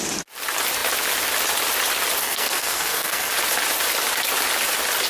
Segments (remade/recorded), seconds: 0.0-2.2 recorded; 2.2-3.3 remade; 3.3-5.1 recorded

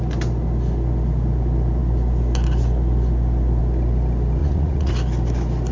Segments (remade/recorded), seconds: 0.0-4.4 recorded; 4.4-4.9 remade; 4.9-5.7 recorded

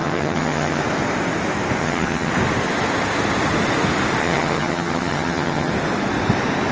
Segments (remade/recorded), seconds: 0.0-0.8 remade; 0.8-1.8 recorded; 1.8-2.3 remade; 2.3-4.2 recorded; 4.2-5.7 remade; 5.7-6.7 recorded

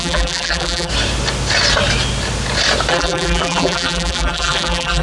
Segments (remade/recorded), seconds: 0.0-0.9 remade; 0.9-2.9 recorded; 2.9-5.0 remade

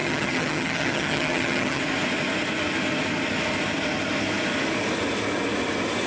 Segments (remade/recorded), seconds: 0.0-1.8 remade; 1.8-6.1 recorded

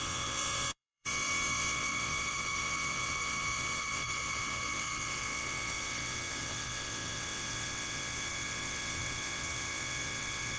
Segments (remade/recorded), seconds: 0.0-10.6 remade

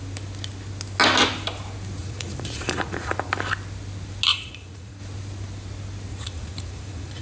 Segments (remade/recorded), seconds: 0.0-2.0 recorded; 2.0-3.3 remade; 3.3-4.3 recorded; 4.3-5.0 remade; 5.0-6.1 recorded; 6.1-7.2 remade

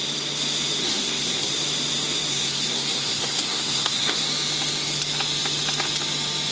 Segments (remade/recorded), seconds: 0.0-0.8 recorded; 0.8-1.5 remade; 1.5-2.3 recorded; 2.3-4.3 remade; 4.3-6.5 recorded